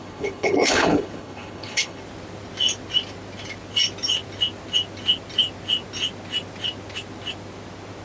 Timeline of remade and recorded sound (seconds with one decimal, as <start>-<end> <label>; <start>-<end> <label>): 0.0-2.0 remade; 2.0-8.0 recorded